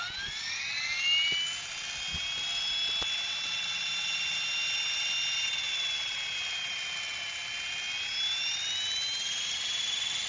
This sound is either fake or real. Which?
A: real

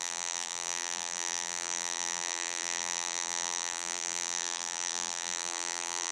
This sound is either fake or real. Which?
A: fake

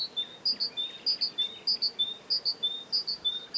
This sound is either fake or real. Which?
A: real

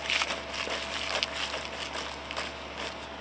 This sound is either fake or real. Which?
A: real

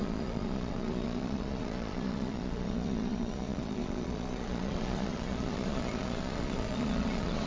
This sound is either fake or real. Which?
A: fake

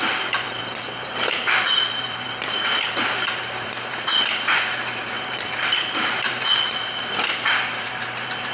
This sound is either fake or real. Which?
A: fake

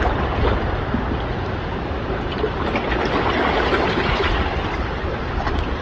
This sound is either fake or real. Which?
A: real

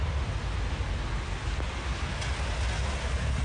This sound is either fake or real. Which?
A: real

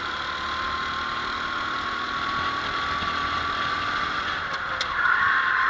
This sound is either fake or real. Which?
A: real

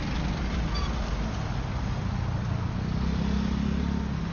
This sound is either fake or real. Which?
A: real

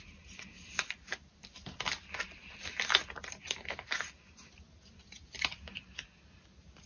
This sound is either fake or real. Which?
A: real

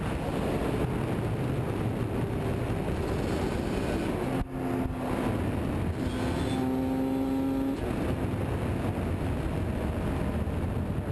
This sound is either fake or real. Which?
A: real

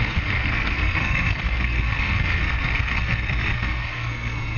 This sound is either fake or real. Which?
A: fake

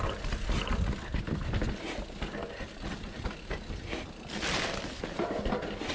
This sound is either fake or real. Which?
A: real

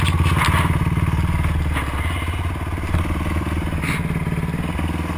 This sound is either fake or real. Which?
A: real